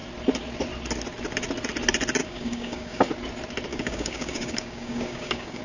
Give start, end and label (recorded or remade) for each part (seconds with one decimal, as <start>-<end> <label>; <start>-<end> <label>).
0.0-2.2 recorded; 2.2-3.1 remade; 3.1-3.7 recorded; 3.7-5.6 remade